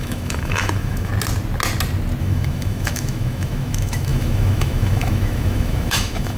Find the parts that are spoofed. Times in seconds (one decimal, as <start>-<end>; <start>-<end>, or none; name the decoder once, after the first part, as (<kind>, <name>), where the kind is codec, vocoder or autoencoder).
0.0-1.1 (autoencoder, DAC-VAE); 2.2-6.4